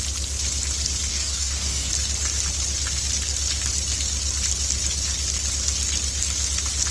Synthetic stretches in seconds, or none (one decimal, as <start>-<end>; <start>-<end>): 1.1-1.9